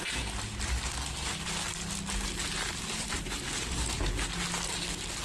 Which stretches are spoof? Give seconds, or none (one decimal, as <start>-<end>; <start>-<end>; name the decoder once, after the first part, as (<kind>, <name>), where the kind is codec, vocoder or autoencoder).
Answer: 2.4-4.0 (vocoder, BigVGAN v2)